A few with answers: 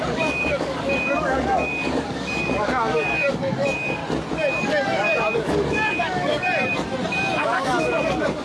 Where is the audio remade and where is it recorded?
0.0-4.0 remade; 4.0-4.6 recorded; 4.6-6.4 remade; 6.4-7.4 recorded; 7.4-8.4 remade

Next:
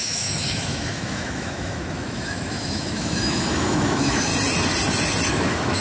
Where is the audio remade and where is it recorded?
0.0-4.3 remade; 4.3-5.3 recorded; 5.3-5.8 remade

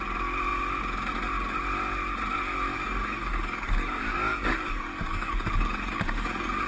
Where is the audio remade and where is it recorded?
0.0-2.7 recorded; 2.7-6.7 remade

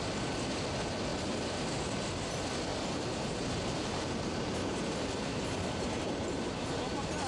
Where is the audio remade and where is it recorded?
0.0-2.7 recorded; 2.7-7.3 remade